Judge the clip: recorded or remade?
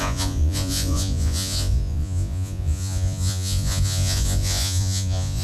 remade